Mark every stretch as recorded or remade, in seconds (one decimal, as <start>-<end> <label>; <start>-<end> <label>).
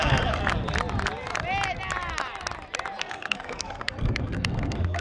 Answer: 0.0-0.4 remade; 0.4-3.0 recorded; 3.0-5.0 remade